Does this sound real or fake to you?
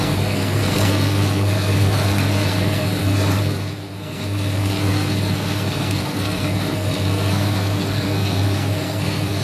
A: fake